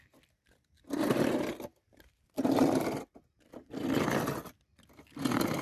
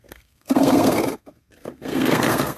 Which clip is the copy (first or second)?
second